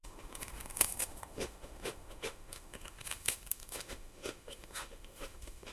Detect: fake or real fake